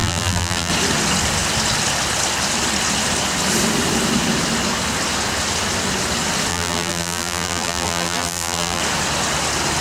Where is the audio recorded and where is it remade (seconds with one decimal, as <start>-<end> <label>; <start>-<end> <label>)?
0.0-0.7 remade; 0.7-6.5 recorded; 6.5-8.8 remade; 8.8-9.8 recorded